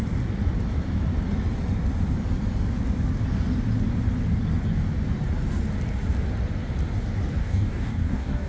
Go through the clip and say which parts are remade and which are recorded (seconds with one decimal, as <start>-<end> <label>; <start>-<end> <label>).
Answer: 0.0-7.4 recorded; 7.4-8.5 remade